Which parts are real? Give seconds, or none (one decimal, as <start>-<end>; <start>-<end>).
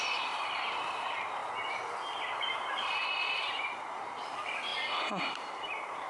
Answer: 1.4-2.3; 4.7-5.2